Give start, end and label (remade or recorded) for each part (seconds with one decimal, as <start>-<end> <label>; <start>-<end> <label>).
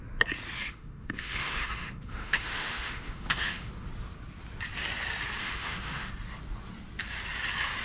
0.0-0.7 recorded; 0.7-3.7 remade; 3.7-5.4 recorded; 5.4-6.1 remade; 6.1-7.8 recorded